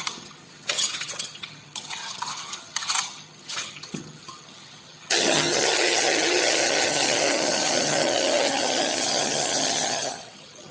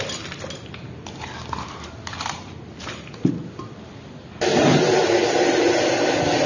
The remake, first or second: first